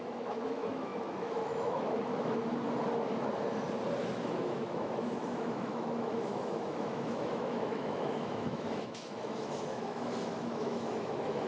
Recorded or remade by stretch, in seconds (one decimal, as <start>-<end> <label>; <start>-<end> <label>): 0.0-2.4 remade; 2.4-4.1 recorded; 4.1-11.5 remade